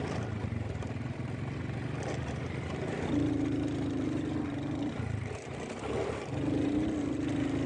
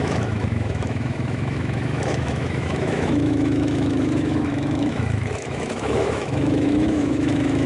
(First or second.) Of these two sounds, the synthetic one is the second